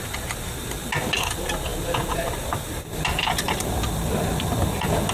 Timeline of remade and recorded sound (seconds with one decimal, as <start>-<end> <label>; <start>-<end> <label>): 0.0-5.1 recorded